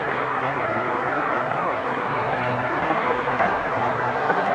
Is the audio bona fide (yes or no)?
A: no